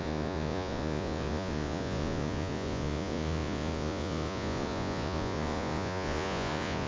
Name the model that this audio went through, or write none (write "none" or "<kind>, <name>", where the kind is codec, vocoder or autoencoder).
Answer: vocoder, Vocos